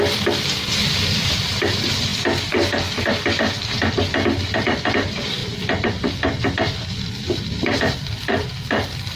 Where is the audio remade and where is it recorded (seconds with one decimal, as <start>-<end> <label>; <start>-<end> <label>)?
0.0-5.4 remade; 5.4-6.0 recorded; 6.0-9.2 remade